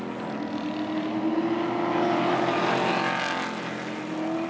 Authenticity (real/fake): real